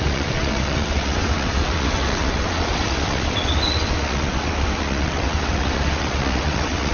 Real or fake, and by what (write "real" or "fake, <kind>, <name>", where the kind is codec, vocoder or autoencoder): fake, vocoder, WaveNeXt